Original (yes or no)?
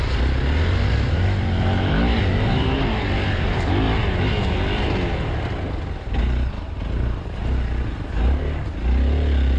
yes